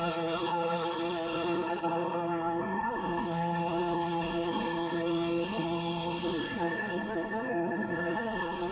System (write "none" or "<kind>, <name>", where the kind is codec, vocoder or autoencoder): codec, SNAC